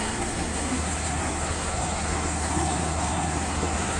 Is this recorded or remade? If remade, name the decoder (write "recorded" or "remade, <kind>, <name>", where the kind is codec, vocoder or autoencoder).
remade, codec, SNAC